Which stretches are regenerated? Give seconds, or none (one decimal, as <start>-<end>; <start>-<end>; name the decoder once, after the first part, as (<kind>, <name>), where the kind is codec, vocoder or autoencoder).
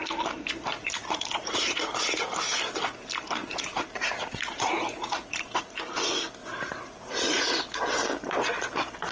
0.8-1.9 (vocoder, Vocos); 3.4-5.8; 6.4-7.6